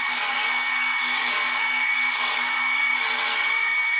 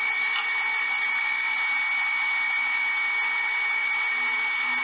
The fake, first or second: first